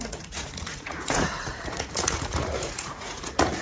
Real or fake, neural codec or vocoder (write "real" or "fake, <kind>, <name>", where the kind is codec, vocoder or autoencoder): fake, vocoder, Vocos